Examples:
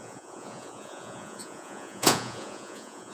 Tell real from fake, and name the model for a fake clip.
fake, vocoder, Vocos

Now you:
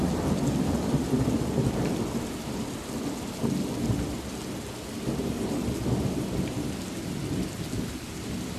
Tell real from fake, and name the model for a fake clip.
real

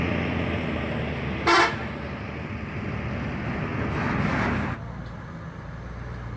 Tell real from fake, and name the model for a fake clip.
real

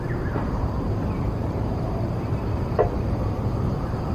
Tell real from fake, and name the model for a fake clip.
fake, vocoder, BigVGAN v2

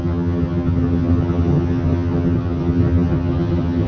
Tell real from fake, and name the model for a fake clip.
fake, vocoder, HiFi-GAN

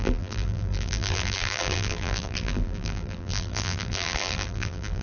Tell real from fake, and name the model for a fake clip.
fake, vocoder, BigVGAN v2